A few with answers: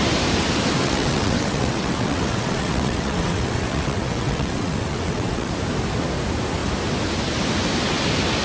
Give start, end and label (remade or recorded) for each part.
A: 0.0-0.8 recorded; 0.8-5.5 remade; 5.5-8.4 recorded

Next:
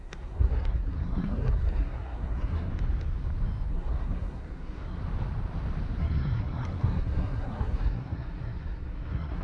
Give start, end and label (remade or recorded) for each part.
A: 0.0-2.7 remade; 2.7-3.7 recorded; 3.7-5.0 remade; 5.0-6.0 recorded; 6.0-9.4 remade

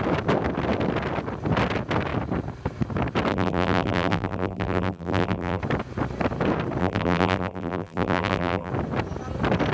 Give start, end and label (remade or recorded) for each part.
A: 0.0-3.3 recorded; 3.3-5.6 remade; 5.6-6.8 recorded; 6.8-8.7 remade; 8.7-9.7 recorded

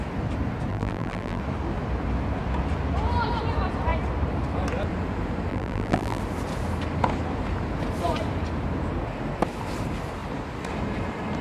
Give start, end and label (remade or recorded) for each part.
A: 0.0-0.7 recorded; 0.7-1.4 remade; 1.4-5.5 recorded; 5.5-6.2 remade; 6.2-11.4 recorded

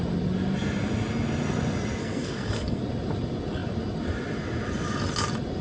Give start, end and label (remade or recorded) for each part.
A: 0.0-2.0 recorded; 2.0-2.8 remade; 2.8-5.6 recorded

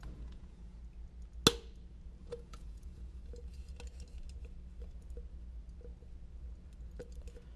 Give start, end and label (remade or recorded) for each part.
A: 0.0-0.8 remade; 0.8-2.2 recorded; 2.2-3.2 remade; 3.2-7.6 recorded